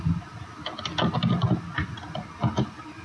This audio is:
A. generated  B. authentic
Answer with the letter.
B